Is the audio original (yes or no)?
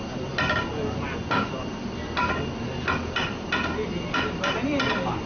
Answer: yes